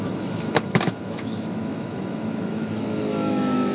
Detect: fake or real fake